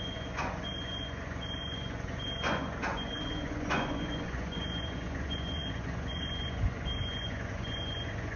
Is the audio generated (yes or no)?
yes